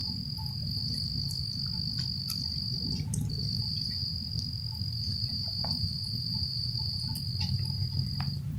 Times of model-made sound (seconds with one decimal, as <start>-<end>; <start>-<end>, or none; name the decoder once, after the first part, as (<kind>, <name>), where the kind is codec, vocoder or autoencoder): 3.6-4.0 (vocoder, BigVGAN v2); 4.9-8.6